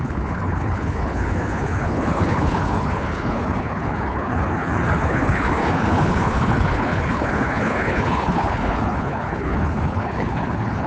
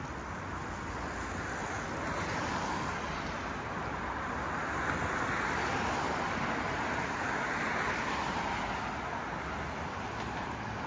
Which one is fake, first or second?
first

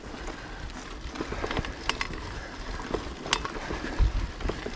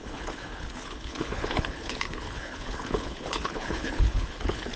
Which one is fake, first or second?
second